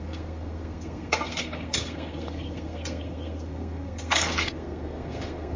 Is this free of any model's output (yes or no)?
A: no